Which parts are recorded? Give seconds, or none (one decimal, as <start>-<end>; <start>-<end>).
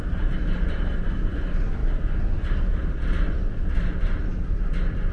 0.0-5.1